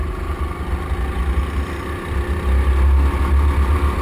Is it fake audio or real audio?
real